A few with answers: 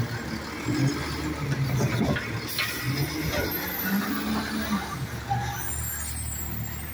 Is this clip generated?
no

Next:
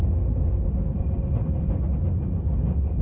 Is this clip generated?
no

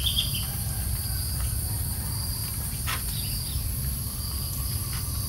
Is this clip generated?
no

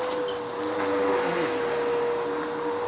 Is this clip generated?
no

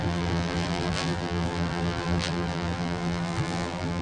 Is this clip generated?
yes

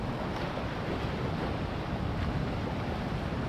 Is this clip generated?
no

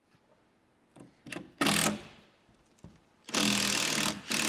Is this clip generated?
no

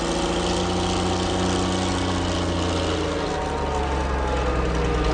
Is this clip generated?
no